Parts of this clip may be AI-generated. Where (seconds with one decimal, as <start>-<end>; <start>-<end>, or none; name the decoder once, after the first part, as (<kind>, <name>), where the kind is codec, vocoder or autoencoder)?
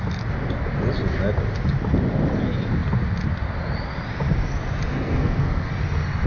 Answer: 4.9-5.7 (codec, SNAC)